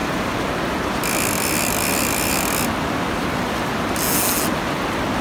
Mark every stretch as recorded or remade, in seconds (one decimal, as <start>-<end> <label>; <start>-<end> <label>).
0.0-5.2 recorded